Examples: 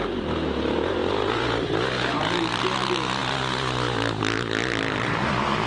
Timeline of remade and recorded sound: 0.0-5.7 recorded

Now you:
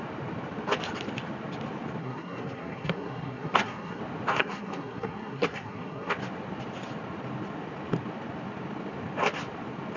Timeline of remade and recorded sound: 0.0-2.0 recorded; 2.0-4.0 remade; 4.0-4.4 recorded; 4.4-6.1 remade; 6.1-10.0 recorded

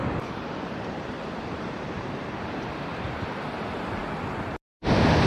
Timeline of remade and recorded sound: 0.0-3.2 remade; 3.2-5.3 recorded

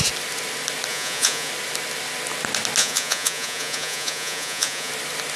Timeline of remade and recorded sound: 0.0-0.9 recorded; 0.9-1.5 remade; 1.5-2.8 recorded; 2.8-4.9 remade; 4.9-5.4 recorded

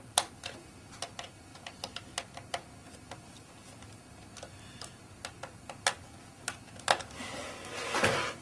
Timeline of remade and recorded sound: 0.0-8.4 recorded

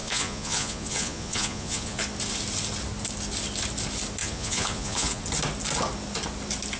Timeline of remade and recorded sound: 0.0-2.0 remade; 2.0-4.2 recorded; 4.2-5.2 remade; 5.2-6.8 recorded